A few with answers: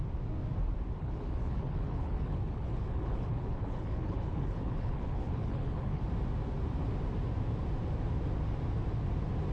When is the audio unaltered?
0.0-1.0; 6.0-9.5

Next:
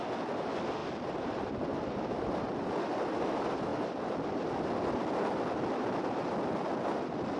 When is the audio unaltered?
0.0-0.8; 1.5-7.4

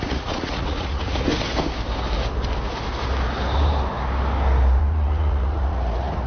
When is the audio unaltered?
1.3-4.8